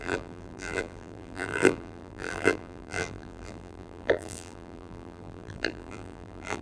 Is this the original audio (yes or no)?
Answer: no